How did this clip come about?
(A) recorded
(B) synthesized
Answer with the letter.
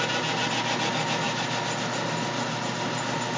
A